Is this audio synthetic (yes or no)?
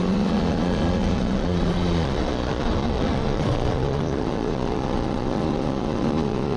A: yes